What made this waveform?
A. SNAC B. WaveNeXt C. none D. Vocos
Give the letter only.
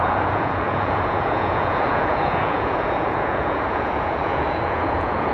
D